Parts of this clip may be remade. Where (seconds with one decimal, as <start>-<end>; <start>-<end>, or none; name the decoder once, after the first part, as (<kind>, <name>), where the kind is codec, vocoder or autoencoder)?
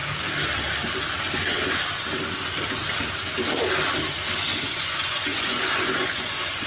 4.5-6.7 (vocoder, Vocos)